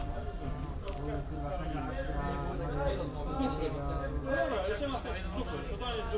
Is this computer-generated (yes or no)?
no